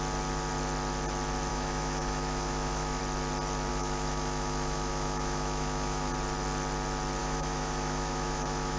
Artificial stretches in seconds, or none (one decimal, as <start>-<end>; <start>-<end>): 1.5-3.0; 3.7-6.1; 7.2-8.8